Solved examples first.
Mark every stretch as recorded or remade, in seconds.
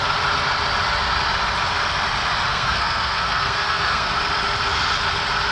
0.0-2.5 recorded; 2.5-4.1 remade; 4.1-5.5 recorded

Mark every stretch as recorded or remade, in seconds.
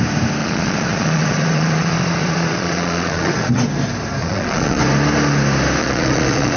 0.0-0.4 recorded; 0.4-3.5 remade; 3.5-4.2 recorded; 4.2-4.8 remade; 4.8-5.8 recorded; 5.8-6.6 remade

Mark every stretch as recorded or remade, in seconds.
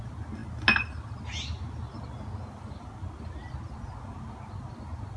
0.0-5.2 recorded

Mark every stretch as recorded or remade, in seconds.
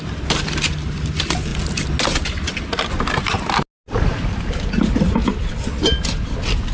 0.0-6.7 recorded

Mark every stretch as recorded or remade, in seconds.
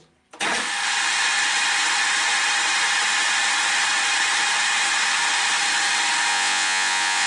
0.0-6.3 recorded; 6.3-7.3 remade